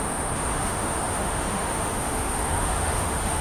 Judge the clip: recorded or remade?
remade